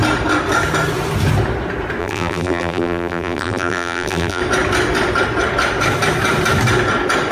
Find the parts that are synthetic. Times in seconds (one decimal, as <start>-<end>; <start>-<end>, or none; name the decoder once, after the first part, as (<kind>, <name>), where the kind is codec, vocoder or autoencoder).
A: 2.0-4.4 (vocoder, BigVGAN v2)